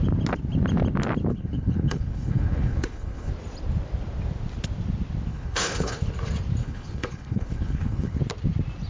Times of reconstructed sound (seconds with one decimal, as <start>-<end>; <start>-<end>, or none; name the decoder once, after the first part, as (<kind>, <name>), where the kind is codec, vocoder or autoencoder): 1.3-3.3 (codec, HILCodec); 5.3-6.0; 6.6-8.2